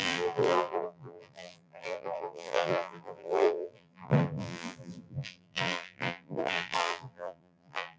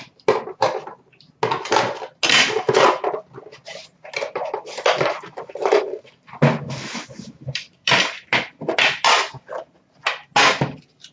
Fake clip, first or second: first